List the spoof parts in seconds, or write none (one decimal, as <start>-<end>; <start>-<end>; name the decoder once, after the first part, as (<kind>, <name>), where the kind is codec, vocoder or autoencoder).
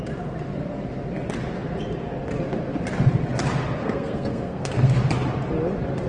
3.8-4.9 (codec, SNAC)